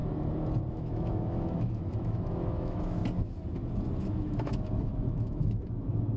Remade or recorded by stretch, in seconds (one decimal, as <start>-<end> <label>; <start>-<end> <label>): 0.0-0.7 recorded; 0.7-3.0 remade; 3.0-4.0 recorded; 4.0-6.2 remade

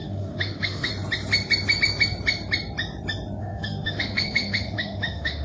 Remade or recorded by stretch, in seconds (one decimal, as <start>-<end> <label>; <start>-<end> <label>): 0.0-0.9 remade; 0.9-3.4 recorded; 3.4-5.4 remade

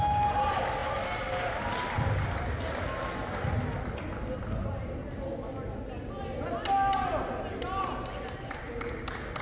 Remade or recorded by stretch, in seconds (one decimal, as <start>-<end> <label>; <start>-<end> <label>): 0.0-9.4 recorded